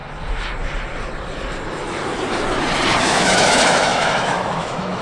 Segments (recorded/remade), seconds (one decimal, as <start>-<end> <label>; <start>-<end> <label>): 0.0-3.0 recorded; 3.0-5.0 remade